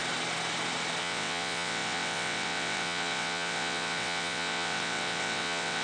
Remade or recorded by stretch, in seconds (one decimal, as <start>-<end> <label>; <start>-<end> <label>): 0.0-1.0 recorded; 1.0-5.8 remade